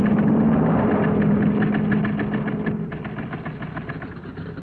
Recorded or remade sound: recorded